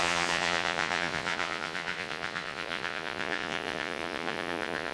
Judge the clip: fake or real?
fake